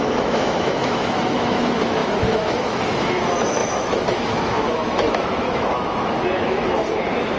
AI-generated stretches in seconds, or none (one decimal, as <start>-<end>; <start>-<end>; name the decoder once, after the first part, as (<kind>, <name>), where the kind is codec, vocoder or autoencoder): 0.0-7.4 (autoencoder, DAC-VAE)